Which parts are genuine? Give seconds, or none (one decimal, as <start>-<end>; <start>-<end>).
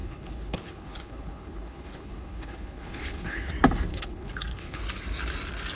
3.5-3.9; 4.8-5.8